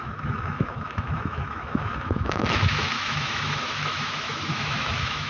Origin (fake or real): fake